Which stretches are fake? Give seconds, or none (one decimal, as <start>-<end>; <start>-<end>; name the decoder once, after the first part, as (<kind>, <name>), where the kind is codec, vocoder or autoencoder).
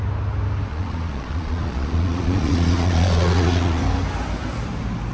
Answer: 0.7-3.8 (vocoder, Vocos)